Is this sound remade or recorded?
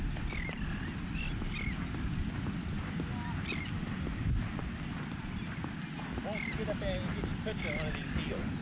recorded